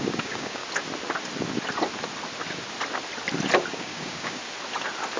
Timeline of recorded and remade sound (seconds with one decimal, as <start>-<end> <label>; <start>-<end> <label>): 0.0-0.6 remade; 0.6-3.7 recorded; 3.7-4.4 remade; 4.4-5.2 recorded